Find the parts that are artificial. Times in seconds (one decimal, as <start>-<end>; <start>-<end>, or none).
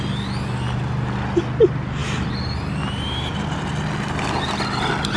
none